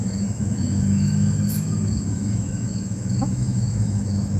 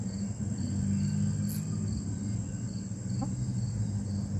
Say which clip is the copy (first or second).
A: first